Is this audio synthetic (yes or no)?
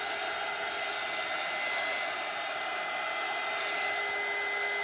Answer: no